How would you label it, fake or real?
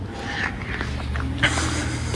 real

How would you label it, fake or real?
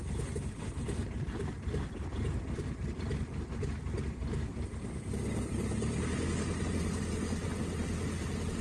real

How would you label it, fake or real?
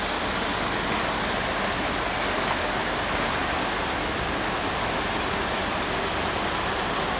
real